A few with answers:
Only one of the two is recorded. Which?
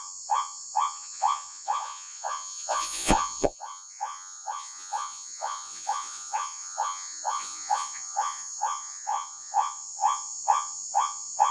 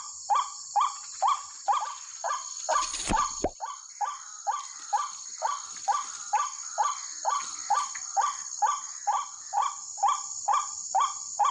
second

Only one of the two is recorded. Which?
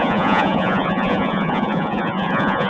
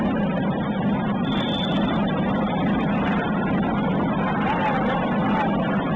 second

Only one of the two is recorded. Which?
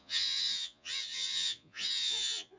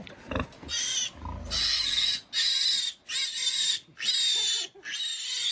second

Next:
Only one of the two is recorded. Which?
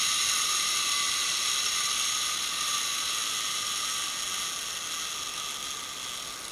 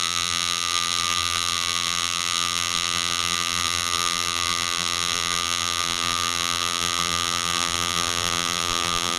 first